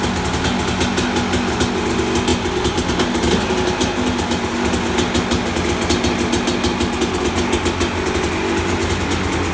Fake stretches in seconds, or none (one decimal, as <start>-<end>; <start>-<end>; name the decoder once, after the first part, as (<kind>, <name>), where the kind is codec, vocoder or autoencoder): none